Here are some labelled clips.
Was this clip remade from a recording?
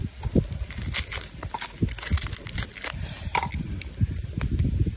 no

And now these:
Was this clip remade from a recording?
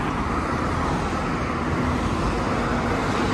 no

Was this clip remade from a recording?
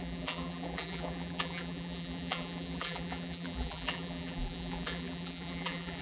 yes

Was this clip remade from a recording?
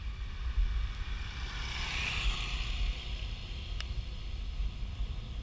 no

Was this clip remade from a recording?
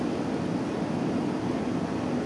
no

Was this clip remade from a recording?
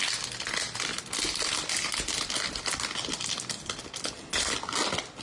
no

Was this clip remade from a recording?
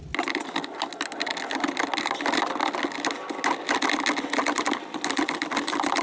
no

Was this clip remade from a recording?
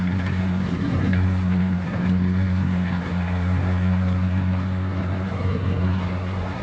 yes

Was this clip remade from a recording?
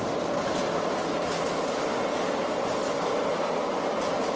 no